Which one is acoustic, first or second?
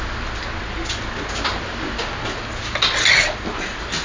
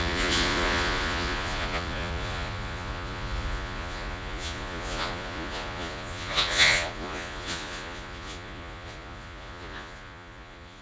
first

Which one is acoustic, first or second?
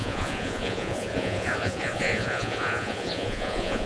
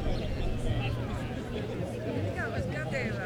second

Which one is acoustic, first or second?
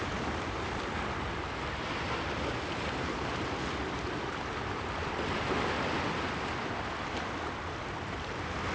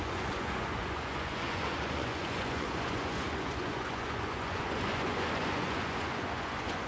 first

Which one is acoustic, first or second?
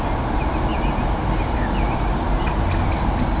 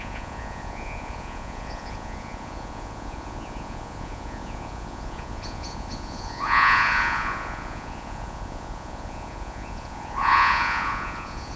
first